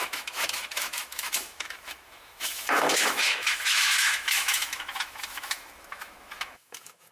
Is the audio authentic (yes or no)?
no